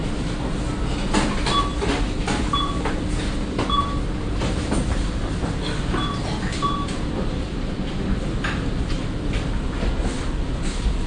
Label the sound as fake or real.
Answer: real